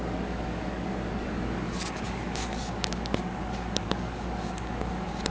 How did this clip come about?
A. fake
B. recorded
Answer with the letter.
A